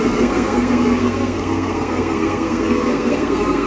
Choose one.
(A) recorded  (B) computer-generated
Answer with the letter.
B